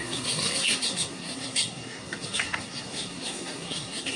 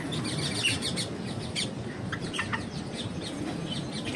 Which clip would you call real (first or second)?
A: second